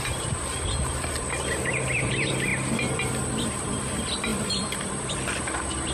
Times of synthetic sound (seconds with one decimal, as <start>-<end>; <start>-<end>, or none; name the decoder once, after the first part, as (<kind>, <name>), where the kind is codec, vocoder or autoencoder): 0.0-5.9 (vocoder, BigVGAN v2)

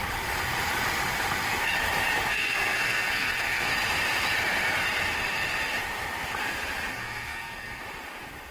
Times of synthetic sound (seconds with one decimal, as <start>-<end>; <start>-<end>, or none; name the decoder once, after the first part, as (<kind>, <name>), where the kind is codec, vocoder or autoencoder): 2.3-3.7 (codec, SNAC); 6.9-7.8